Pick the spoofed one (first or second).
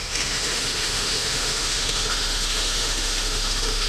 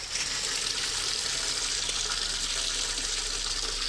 first